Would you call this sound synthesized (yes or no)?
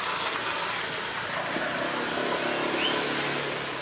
no